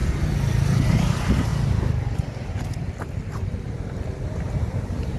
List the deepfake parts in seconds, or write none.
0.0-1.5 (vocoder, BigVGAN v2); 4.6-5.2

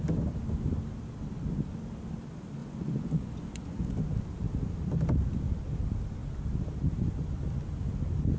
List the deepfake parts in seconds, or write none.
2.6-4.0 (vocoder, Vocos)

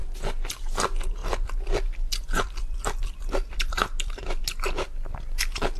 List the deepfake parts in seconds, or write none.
1.2-4.4 (vocoder, BigVGAN v2)